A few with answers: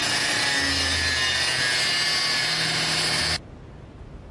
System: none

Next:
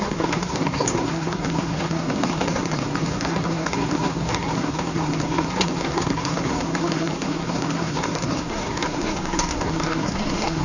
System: codec, SNAC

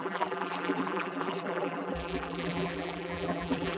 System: vocoder, BigVGAN v2